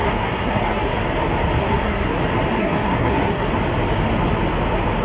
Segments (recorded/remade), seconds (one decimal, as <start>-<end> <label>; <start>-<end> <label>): 0.0-1.0 remade; 1.0-1.6 recorded; 1.6-2.2 remade; 2.2-2.6 recorded; 2.6-3.5 remade; 3.5-5.0 recorded